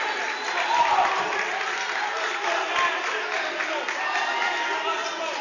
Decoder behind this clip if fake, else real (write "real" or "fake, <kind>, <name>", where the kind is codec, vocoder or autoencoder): real